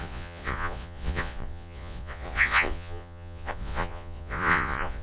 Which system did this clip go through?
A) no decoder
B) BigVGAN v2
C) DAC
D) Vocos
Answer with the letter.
D